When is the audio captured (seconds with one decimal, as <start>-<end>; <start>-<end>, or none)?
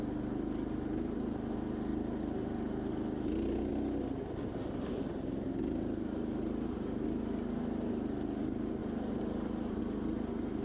0.0-1.9; 2.7-8.8; 9.8-10.6